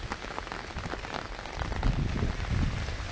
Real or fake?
real